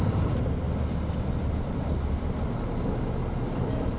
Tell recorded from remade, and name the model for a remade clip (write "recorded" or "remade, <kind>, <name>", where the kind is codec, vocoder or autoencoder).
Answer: recorded